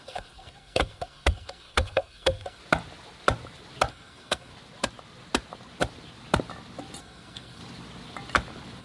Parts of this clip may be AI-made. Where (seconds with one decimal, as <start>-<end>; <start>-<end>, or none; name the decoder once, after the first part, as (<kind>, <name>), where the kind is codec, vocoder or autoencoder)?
0.0-2.6 (codec, SNAC); 3.9-4.5; 7.0-7.6